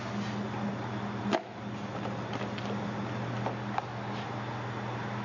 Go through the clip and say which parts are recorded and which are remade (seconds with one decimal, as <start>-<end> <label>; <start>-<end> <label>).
0.0-5.2 recorded